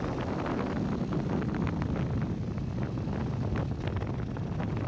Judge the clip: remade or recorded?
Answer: recorded